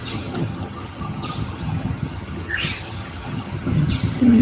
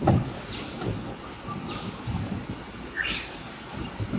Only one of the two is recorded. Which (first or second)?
second